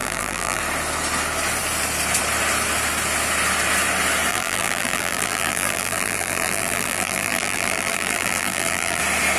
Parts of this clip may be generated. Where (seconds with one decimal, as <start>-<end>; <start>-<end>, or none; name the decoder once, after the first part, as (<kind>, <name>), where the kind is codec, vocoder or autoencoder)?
0.0-0.6 (vocoder, BigVGAN v2); 4.3-9.0